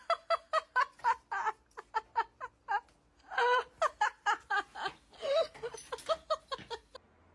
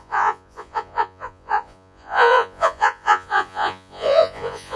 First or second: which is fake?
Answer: second